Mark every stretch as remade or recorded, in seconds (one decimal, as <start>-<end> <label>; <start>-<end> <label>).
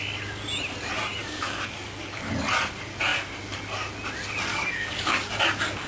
0.0-1.2 recorded; 1.2-2.3 remade; 2.3-4.5 recorded; 4.5-5.3 remade; 5.3-5.9 recorded